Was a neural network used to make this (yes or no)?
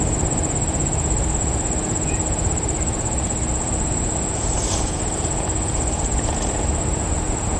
yes